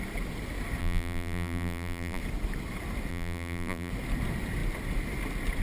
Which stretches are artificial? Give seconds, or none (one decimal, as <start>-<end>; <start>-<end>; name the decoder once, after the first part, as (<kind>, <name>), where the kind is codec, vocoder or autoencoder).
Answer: 0.8-2.2 (vocoder, BigVGAN v2); 3.1-3.9